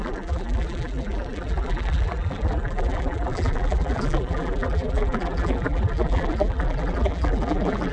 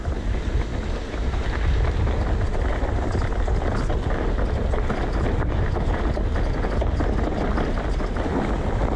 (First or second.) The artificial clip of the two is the first